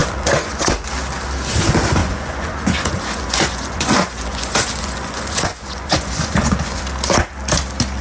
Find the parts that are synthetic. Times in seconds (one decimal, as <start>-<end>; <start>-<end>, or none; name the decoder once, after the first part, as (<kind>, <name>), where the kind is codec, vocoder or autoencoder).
0.0-0.9 (vocoder, Vocos); 2.0-6.8